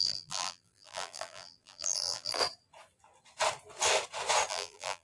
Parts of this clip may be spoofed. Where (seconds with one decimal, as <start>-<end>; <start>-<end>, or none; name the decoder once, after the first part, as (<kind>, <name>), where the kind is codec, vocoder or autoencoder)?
0.0-2.4 (vocoder, BigVGAN v2); 4.5-5.0